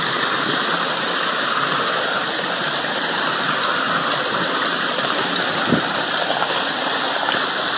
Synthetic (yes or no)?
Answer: no